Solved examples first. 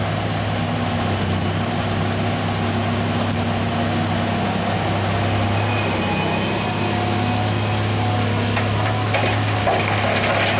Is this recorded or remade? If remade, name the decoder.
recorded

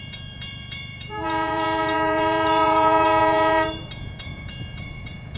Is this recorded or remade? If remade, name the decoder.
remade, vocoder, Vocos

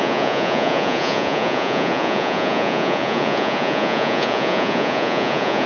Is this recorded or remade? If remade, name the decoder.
remade, vocoder, Vocos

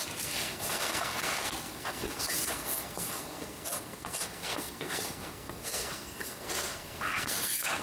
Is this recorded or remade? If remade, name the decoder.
remade, codec, SNAC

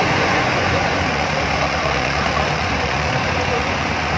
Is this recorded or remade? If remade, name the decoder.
remade, vocoder, Vocos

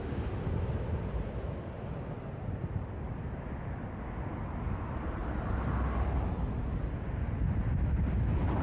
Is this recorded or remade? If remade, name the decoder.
recorded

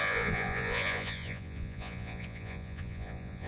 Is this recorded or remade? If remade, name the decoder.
remade, vocoder, Vocos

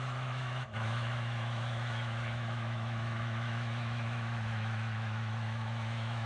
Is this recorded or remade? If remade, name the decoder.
remade, autoencoder, DAC-VAE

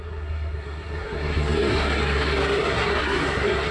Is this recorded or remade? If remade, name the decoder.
remade, codec, SNAC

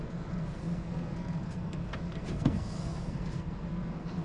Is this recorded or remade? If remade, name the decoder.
remade, codec, SNAC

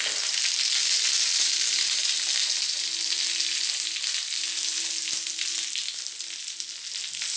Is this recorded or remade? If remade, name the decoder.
recorded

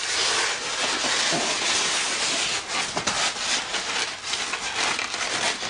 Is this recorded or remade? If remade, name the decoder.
recorded